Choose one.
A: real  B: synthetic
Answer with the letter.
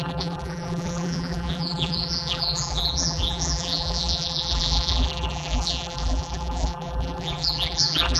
B